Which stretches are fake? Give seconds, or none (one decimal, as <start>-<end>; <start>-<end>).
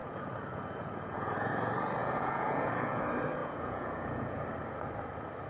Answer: 0.0-1.5; 2.0-3.0; 3.4-4.4